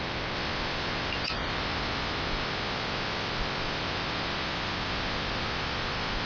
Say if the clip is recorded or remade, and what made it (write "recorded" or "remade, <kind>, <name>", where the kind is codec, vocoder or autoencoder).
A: recorded